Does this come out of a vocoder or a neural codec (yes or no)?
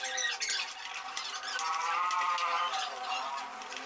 no